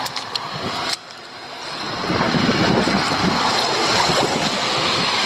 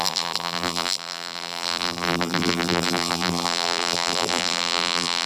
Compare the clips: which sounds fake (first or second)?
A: second